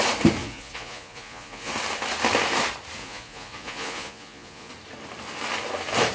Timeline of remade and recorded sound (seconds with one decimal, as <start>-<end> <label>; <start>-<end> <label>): 0.0-0.4 recorded; 0.4-1.7 remade; 1.7-3.0 recorded; 3.0-4.7 remade; 4.7-6.1 recorded